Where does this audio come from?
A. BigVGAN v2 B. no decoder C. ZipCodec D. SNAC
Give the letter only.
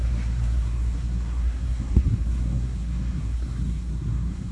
D